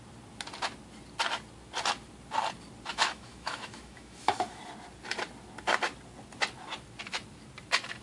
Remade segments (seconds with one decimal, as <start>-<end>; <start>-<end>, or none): 2.9-4.6